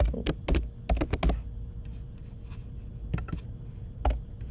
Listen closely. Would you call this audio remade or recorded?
recorded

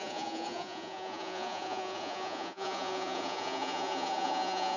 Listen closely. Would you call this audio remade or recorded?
remade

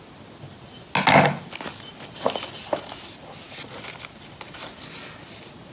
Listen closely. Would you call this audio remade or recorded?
recorded